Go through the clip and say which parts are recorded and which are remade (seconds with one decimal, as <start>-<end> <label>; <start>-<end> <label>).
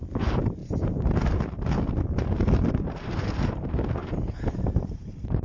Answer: 0.0-4.0 remade; 4.0-4.5 recorded; 4.5-5.4 remade